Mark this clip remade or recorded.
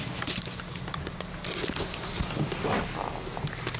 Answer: recorded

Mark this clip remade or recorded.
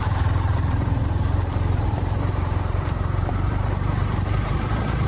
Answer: remade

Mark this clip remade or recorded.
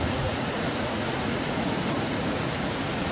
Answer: remade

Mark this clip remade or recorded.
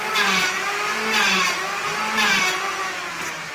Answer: remade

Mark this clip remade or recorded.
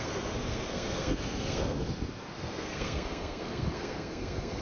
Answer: remade